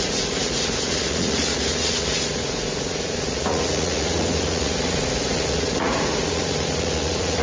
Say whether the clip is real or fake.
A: fake